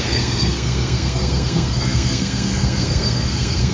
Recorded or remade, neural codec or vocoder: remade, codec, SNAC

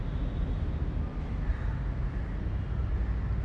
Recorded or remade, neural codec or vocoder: recorded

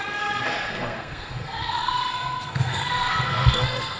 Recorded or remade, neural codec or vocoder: remade, codec, SNAC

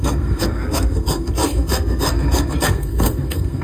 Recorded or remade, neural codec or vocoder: remade, codec, SNAC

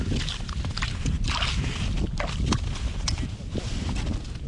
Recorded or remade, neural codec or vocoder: recorded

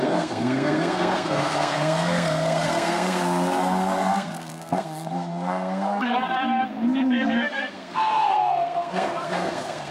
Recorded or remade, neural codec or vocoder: remade, codec, SNAC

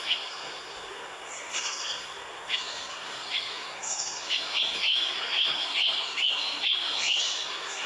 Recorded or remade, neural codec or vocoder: remade, codec, SNAC